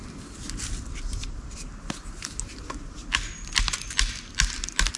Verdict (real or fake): real